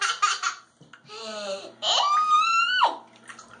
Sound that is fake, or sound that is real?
real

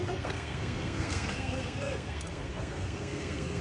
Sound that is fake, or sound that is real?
fake